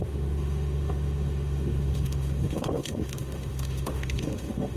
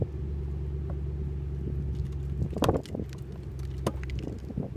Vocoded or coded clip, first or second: first